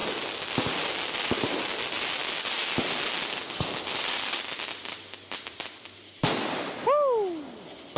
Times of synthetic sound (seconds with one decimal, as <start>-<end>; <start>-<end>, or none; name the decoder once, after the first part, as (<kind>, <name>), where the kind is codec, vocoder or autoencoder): none